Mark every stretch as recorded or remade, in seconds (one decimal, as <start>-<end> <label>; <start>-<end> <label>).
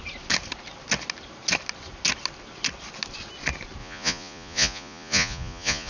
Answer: 0.0-3.8 recorded; 3.8-5.9 remade